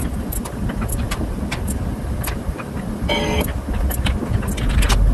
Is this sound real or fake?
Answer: real